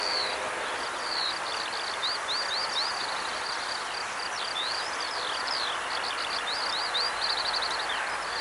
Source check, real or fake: real